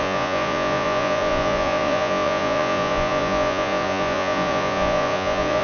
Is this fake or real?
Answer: fake